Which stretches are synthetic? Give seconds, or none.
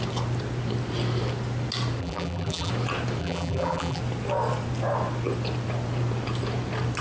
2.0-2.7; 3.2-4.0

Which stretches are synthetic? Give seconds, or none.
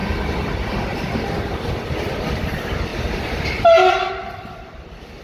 1.7-2.9; 4.1-5.2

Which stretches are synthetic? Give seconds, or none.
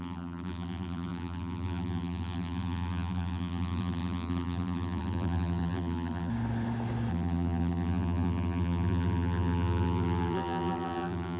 0.0-6.3; 7.1-11.4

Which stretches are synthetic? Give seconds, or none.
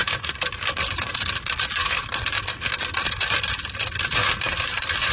0.0-1.1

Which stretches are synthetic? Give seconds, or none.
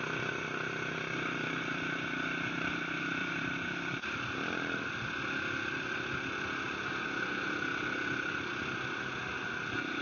3.2-6.1; 8.5-9.1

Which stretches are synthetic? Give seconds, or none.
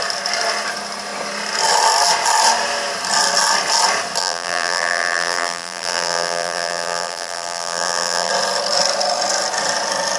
4.2-8.3